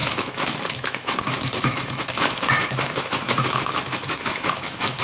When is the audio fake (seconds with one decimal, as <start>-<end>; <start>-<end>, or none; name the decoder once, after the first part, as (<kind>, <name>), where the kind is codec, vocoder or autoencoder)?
0.0-5.0 (autoencoder, DAC-VAE)